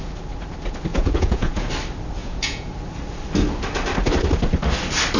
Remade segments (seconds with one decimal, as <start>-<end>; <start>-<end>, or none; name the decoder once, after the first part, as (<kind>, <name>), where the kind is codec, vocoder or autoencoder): 0.9-1.7 (vocoder, Vocos); 2.2-2.7